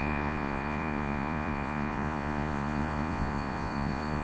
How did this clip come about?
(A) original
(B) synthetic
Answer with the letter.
B